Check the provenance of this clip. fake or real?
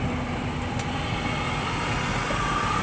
real